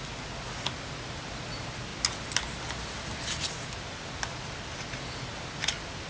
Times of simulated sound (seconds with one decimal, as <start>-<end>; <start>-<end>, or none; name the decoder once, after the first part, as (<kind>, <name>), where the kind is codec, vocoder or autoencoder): none